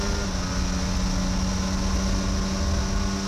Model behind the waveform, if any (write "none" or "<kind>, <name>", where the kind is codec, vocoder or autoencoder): none